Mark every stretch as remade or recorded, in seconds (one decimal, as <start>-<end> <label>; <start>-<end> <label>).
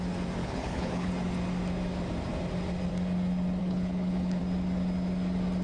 0.0-0.4 recorded; 0.4-1.1 remade; 1.1-3.6 recorded; 3.6-4.4 remade; 4.4-5.6 recorded